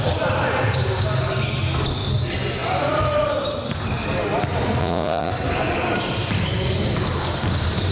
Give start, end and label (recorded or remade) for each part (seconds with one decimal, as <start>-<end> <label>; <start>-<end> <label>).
0.0-4.8 recorded; 4.8-5.3 remade; 5.3-7.9 recorded